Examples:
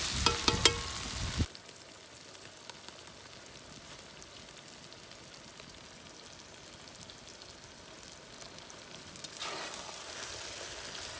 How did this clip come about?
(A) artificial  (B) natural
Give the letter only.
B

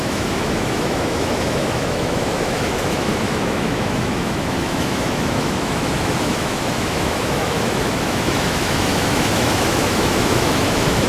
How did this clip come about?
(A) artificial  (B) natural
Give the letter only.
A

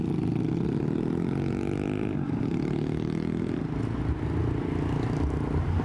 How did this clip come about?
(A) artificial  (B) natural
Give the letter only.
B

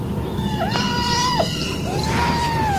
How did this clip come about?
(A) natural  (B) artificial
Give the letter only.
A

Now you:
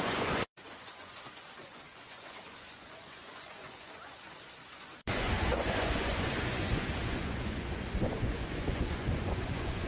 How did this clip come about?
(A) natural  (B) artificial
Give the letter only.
B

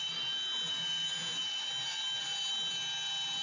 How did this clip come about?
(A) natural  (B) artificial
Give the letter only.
A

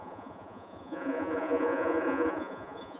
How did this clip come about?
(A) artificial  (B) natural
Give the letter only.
A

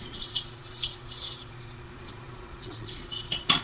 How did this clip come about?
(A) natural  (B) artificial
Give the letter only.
B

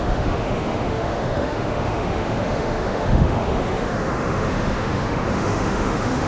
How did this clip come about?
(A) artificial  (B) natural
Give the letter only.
A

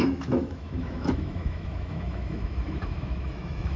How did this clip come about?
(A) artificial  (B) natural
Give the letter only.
A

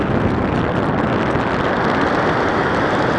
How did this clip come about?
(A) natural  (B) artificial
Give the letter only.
A